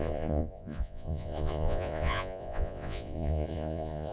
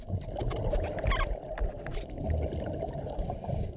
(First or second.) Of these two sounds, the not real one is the first